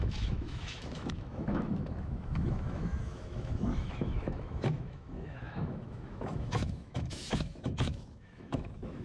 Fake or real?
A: fake